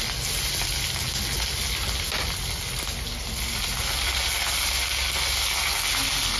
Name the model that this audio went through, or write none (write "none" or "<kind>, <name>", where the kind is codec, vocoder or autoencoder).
none